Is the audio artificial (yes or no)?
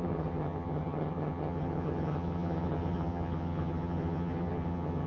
yes